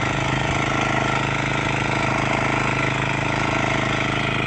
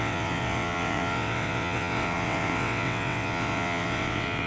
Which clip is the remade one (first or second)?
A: second